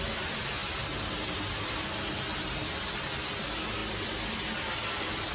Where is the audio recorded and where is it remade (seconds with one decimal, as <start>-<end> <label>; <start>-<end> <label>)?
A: 0.0-5.3 recorded